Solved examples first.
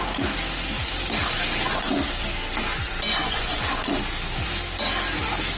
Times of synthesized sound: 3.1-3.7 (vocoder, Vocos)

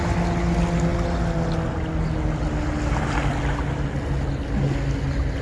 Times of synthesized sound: none

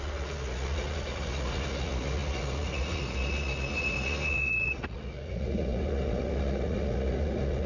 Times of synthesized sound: 0.0-7.7 (vocoder, Vocos)

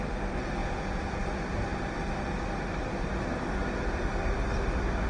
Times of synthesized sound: 0.6-1.2 (vocoder, Vocos)

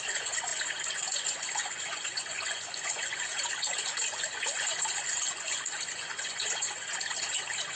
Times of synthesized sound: 0.0-7.8 (vocoder, Vocos)

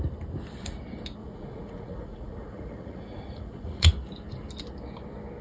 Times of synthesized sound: 1.2-3.9 (vocoder, Vocos)

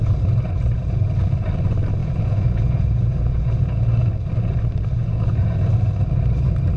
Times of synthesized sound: 2.0-4.1 (vocoder, Vocos); 5.0-5.6